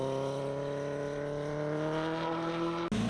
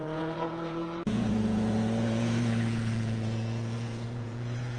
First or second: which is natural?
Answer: first